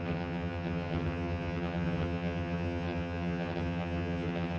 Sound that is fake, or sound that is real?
fake